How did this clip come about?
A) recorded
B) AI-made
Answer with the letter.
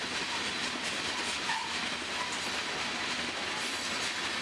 A